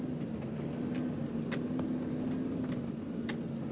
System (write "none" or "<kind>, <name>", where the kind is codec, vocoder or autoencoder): none